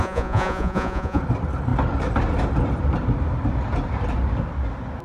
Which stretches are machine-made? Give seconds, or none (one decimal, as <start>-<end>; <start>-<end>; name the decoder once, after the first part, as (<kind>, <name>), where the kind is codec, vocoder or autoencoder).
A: 0.0-1.2 (vocoder, Vocos)